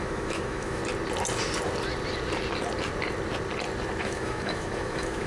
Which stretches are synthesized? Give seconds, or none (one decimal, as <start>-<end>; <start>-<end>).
0.0-0.8; 4.0-5.3